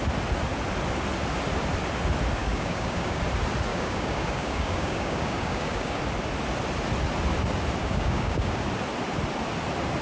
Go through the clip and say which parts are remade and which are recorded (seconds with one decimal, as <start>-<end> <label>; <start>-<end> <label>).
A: 0.0-2.4 recorded; 2.4-3.2 remade; 3.2-3.7 recorded; 3.7-6.0 remade; 6.0-7.8 recorded; 7.8-8.6 remade; 8.6-10.0 recorded